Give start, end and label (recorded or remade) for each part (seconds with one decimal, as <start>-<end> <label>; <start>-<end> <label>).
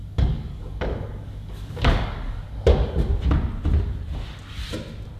0.0-3.1 remade; 3.1-5.2 recorded